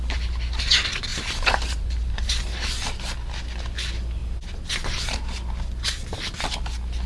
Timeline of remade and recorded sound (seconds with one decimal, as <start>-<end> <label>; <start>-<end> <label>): 0.0-1.1 recorded; 1.1-3.0 remade; 3.0-7.1 recorded